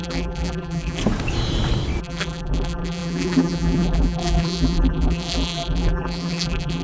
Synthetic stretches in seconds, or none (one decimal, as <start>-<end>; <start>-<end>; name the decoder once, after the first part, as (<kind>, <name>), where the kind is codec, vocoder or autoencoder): 0.0-1.0 (vocoder, BigVGAN v2); 2.0-6.8